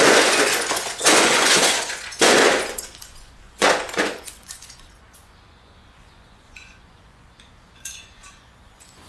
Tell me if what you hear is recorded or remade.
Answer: remade